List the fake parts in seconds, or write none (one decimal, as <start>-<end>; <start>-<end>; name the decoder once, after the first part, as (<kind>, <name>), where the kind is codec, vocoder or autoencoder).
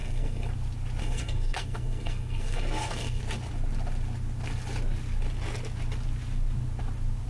0.0-0.5 (codec, SNAC); 1.0-3.2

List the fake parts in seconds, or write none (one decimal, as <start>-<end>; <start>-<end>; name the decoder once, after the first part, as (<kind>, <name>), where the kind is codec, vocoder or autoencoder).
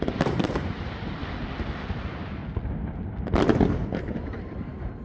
0.0-1.2 (vocoder, BigVGAN v2); 1.9-2.4; 3.8-5.0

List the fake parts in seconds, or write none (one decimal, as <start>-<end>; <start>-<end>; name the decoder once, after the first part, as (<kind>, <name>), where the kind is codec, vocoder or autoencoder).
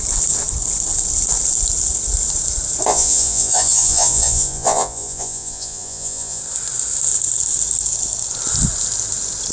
2.9-6.4 (vocoder, Vocos)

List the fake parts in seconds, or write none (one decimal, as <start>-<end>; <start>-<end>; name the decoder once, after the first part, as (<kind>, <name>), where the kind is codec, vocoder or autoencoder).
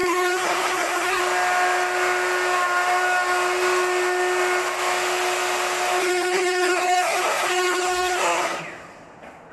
0.0-1.2 (codec, SNAC); 6.0-8.6